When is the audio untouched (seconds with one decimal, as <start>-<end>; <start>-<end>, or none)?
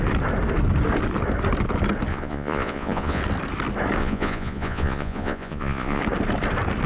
0.0-2.1; 3.2-4.0; 6.0-6.9